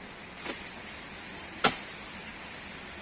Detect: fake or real real